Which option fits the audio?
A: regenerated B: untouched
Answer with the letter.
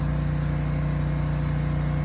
B